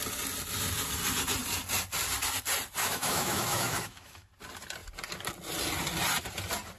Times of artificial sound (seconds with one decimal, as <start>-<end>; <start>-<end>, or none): 2.8-4.3